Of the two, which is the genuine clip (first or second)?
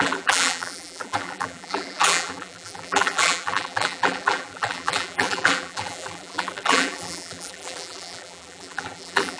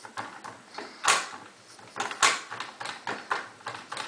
second